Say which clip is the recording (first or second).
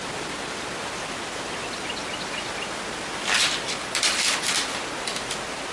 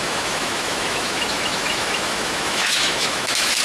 first